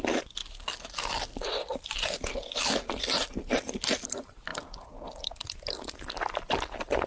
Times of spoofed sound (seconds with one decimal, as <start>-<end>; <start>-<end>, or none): none